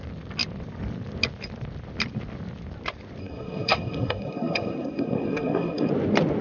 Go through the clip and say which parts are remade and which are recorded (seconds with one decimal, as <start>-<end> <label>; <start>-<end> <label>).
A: 0.0-3.2 recorded; 3.2-5.9 remade; 5.9-6.4 recorded